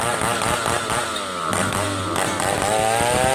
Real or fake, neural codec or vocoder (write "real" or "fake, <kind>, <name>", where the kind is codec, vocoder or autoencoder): real